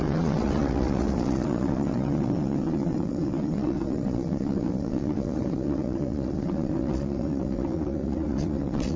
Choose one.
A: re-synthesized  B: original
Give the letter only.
A